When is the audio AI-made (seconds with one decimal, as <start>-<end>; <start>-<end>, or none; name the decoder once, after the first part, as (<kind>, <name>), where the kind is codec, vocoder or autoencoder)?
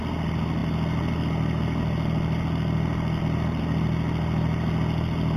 none